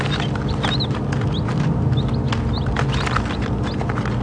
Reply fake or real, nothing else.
real